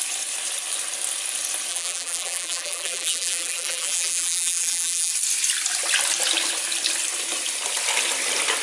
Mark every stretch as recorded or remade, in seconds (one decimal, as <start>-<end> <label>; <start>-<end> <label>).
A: 0.0-1.7 recorded; 1.7-5.1 remade; 5.1-8.6 recorded

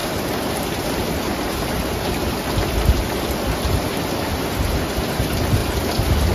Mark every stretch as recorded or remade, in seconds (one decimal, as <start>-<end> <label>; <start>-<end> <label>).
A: 0.0-2.1 remade; 2.1-5.6 recorded; 5.6-6.3 remade

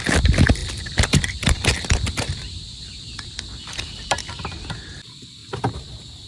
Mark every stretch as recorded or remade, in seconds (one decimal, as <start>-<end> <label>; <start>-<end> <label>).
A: 0.0-0.6 recorded; 0.6-4.3 remade; 4.3-6.3 recorded

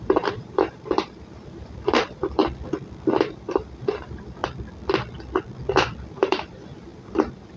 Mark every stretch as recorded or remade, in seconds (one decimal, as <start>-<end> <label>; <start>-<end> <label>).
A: 0.0-2.4 remade; 2.4-3.2 recorded; 3.2-4.4 remade; 4.4-6.1 recorded; 6.1-7.6 remade

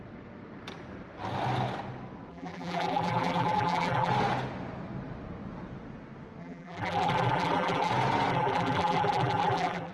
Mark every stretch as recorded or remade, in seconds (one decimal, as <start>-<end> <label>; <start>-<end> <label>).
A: 0.0-2.3 recorded; 2.3-4.1 remade; 4.1-6.4 recorded; 6.4-7.9 remade; 7.9-8.3 recorded; 8.3-9.9 remade